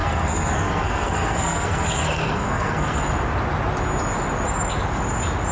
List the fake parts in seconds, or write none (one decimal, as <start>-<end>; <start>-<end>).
0.0-3.0